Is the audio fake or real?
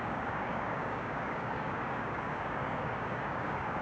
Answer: fake